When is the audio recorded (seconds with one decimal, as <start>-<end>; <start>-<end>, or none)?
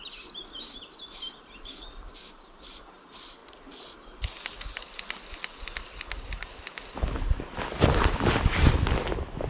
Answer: 0.0-9.5